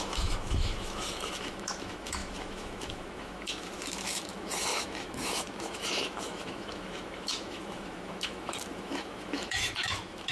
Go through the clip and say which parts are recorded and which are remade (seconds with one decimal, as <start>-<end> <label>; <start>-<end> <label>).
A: 0.0-10.3 remade